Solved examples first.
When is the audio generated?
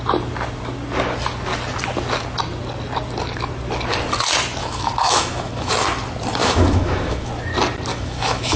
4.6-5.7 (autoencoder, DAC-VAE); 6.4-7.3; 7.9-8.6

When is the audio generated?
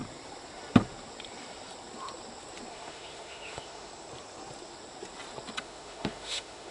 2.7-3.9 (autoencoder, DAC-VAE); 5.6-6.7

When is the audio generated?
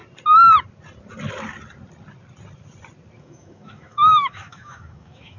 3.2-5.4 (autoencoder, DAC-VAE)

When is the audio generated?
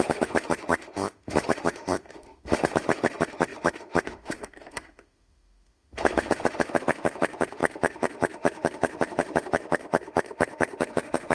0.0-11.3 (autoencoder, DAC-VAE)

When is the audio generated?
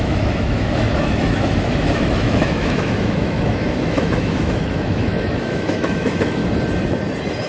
0.0-6.4 (autoencoder, DAC-VAE)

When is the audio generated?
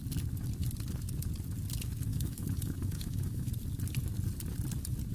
2.1-3.5 (autoencoder, DAC-VAE)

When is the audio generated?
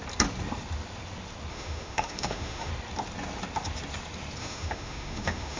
1.5-2.7 (autoencoder, DAC-VAE); 4.4-5.6